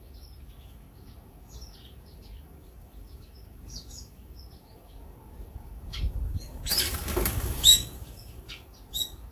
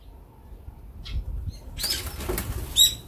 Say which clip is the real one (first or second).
second